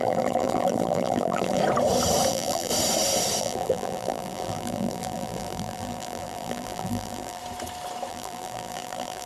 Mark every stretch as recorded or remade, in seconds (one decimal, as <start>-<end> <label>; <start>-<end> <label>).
0.0-1.6 remade; 1.6-2.3 recorded; 2.3-2.7 remade; 2.7-3.4 recorded; 3.4-7.4 remade; 7.4-8.1 recorded; 8.1-9.3 remade